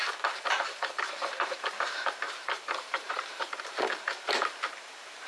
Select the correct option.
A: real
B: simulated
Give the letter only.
B